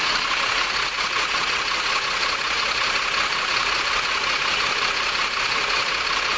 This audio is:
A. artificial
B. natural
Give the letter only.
A